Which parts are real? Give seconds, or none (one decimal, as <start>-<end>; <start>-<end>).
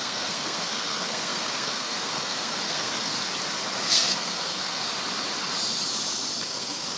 3.3-3.8; 4.9-6.4